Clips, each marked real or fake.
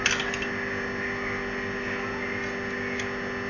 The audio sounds real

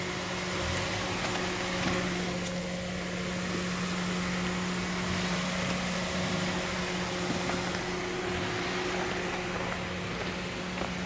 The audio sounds real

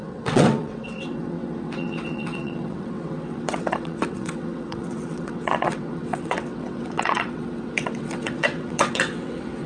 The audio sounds fake